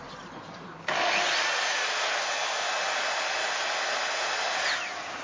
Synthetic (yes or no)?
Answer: no